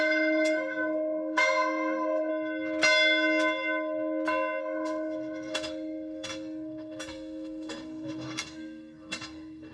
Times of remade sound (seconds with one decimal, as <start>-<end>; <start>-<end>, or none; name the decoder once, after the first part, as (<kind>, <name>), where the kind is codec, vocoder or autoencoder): 0.0-2.3 (codec, SNAC); 4.6-9.7